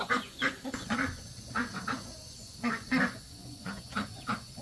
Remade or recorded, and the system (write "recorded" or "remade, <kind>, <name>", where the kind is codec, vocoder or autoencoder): remade, vocoder, Vocos